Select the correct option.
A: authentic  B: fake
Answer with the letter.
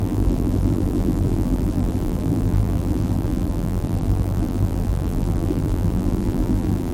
B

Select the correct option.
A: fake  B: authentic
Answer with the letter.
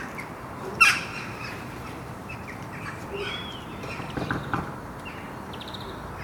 A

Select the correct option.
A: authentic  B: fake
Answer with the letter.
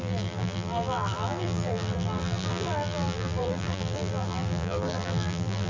B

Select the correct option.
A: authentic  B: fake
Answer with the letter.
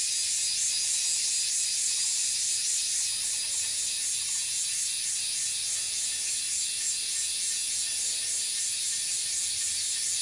A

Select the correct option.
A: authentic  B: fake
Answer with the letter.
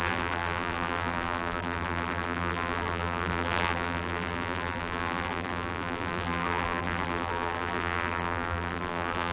B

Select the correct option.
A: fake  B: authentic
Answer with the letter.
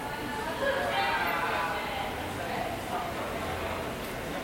B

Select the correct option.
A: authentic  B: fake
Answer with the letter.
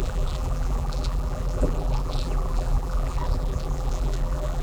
B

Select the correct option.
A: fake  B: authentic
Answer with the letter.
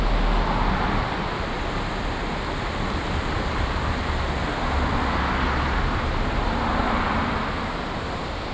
B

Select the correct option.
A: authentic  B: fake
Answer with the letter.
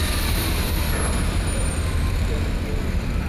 A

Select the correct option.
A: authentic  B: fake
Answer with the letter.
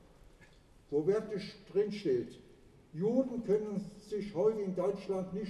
A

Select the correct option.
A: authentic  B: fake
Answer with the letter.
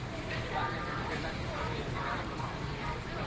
B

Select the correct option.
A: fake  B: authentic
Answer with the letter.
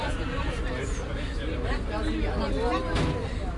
B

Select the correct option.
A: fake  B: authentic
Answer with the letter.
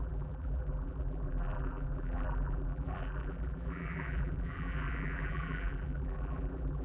A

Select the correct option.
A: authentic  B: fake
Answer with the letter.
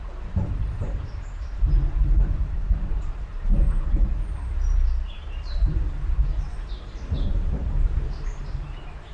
B